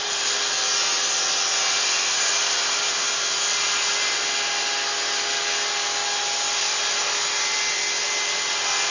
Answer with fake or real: real